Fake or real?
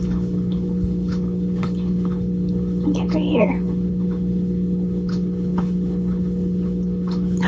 fake